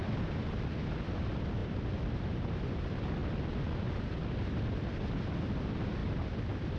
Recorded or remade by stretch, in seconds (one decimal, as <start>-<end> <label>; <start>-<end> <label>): 0.0-1.6 recorded; 1.6-2.2 remade; 2.2-6.0 recorded; 6.0-6.8 remade